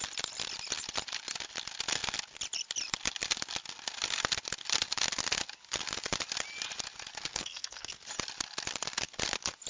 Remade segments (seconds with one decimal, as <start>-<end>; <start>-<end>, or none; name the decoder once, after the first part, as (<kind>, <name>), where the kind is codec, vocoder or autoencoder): 7.3-8.0 (codec, SNAC)

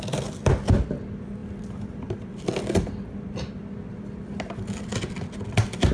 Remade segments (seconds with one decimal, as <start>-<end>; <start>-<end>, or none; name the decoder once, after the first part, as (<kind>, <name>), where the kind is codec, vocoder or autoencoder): none

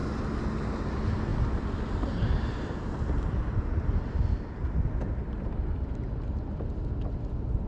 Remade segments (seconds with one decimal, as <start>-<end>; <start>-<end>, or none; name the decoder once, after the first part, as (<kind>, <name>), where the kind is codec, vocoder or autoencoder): none

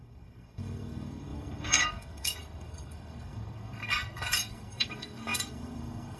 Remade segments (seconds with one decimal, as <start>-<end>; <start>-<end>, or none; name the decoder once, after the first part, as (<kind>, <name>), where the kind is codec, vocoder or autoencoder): 0.0-6.2 (codec, SNAC)

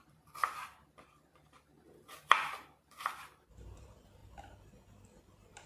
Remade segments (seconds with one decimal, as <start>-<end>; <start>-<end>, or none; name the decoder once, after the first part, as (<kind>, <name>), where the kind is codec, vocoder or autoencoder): 0.0-0.7 (vocoder, BigVGAN v2); 3.4-4.2; 5.2-5.7

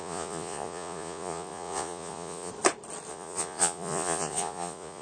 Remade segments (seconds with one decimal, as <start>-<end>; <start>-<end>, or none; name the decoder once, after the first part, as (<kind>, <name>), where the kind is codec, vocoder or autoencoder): 0.0-2.5 (vocoder, Vocos); 3.1-5.0